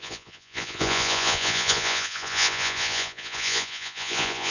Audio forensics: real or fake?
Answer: fake